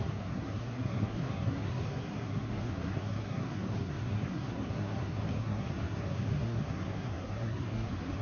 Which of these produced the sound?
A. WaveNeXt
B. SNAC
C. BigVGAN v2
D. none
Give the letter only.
B